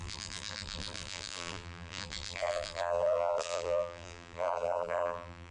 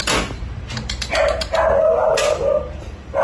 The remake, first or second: first